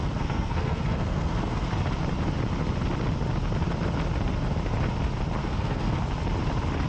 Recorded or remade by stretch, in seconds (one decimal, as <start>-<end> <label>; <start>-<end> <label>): 0.0-1.7 remade; 1.7-5.4 recorded; 5.4-6.0 remade; 6.0-6.9 recorded